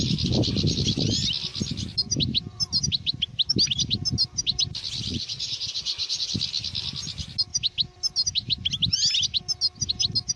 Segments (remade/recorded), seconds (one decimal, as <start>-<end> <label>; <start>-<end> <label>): 0.0-5.1 recorded; 5.1-6.3 remade; 6.3-10.4 recorded